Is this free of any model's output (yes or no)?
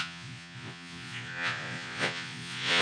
no